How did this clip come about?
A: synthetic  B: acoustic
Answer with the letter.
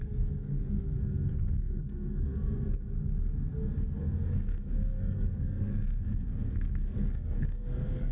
A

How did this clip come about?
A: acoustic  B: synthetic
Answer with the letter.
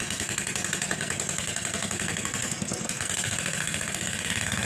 B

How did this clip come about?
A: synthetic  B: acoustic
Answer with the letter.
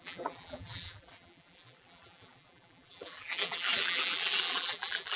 A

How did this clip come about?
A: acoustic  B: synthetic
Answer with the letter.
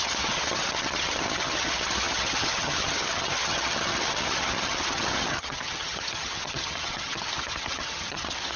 B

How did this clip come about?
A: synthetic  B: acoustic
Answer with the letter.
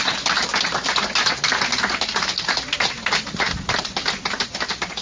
B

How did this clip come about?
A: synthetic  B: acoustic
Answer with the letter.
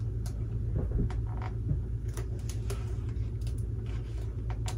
B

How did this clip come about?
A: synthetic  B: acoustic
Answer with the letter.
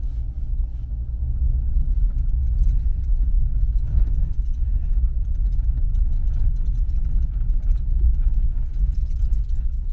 B